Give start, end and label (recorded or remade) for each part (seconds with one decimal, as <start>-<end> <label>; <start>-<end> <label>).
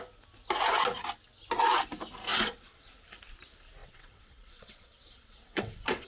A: 0.0-2.3 recorded; 2.3-2.9 remade; 2.9-3.8 recorded; 3.8-6.1 remade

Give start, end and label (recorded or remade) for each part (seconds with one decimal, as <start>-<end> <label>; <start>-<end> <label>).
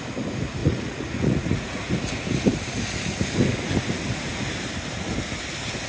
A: 0.0-0.6 recorded; 0.6-1.9 remade; 1.9-5.9 recorded